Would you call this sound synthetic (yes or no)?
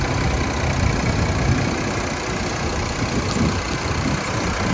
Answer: no